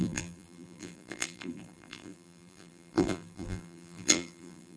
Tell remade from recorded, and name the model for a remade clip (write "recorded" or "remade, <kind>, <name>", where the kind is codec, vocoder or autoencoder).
remade, vocoder, BigVGAN v2